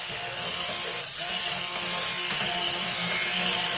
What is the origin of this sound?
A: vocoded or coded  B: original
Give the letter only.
B